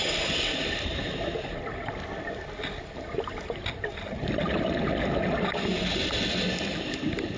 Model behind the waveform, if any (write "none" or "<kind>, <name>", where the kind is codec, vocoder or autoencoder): none